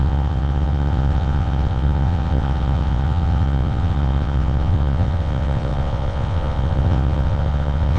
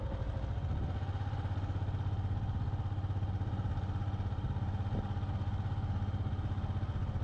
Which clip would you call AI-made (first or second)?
first